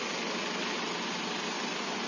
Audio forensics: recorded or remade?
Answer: recorded